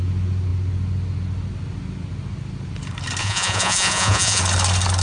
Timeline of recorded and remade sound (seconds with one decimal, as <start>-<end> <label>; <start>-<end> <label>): 0.0-3.2 recorded; 3.2-4.4 remade; 4.4-5.0 recorded